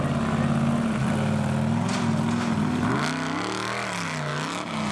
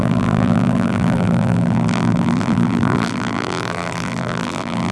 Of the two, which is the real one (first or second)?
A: first